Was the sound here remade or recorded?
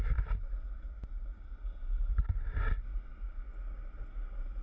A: recorded